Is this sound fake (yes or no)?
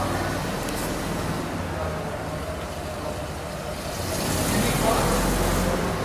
no